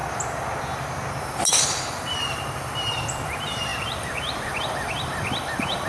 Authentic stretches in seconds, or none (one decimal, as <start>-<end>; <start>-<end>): 0.0-1.2